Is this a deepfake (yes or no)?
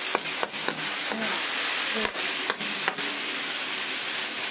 no